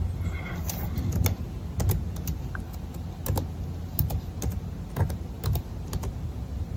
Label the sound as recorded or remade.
recorded